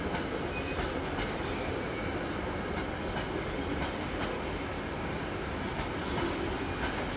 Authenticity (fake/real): real